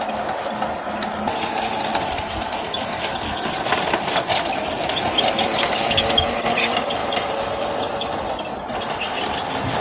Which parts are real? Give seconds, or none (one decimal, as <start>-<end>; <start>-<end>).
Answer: 0.0-9.8